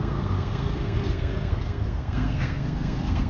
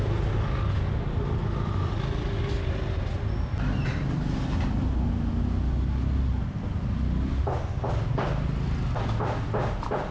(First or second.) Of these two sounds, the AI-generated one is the first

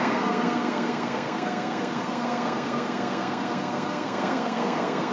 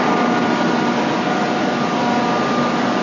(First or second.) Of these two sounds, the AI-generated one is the first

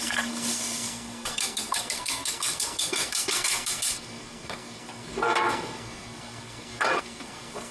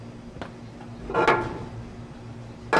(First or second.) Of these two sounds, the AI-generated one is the first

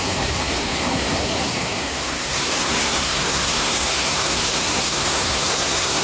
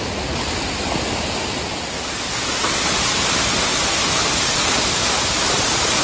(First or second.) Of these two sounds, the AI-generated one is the first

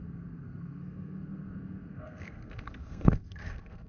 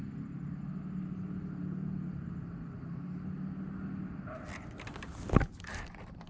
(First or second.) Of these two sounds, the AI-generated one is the first